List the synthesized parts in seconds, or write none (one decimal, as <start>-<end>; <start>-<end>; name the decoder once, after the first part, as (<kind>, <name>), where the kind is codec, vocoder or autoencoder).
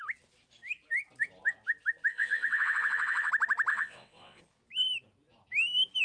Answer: 2.1-3.3 (vocoder, WaveNeXt); 3.7-4.4